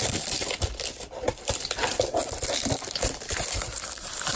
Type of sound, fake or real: fake